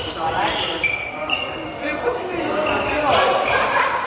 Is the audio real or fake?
real